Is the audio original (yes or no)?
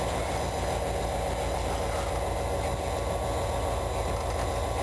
yes